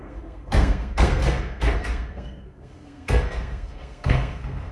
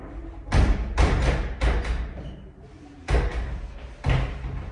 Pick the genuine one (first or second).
second